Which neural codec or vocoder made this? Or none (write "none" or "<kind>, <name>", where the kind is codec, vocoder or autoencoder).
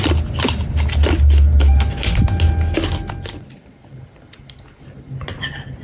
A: none